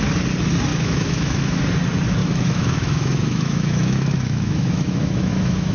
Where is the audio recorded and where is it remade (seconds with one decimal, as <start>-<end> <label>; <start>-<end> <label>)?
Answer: 0.0-0.7 recorded; 0.7-1.6 remade; 1.6-2.2 recorded; 2.2-5.7 remade

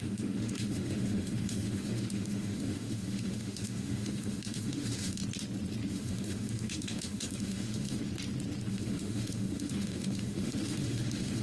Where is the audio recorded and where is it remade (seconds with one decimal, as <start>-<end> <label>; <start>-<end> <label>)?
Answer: 0.0-5.2 remade; 5.2-5.9 recorded; 5.9-8.0 remade; 8.0-8.7 recorded; 8.7-11.4 remade

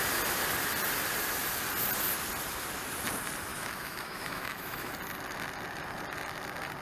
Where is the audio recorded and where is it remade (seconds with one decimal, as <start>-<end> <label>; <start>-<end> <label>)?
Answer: 0.0-3.5 recorded; 3.5-4.9 remade; 4.9-6.8 recorded

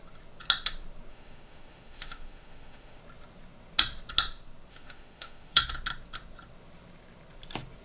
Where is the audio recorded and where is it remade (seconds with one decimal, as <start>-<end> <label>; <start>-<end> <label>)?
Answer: 0.0-1.1 recorded; 1.1-3.0 remade; 3.0-4.7 recorded; 4.7-5.6 remade; 5.6-7.8 recorded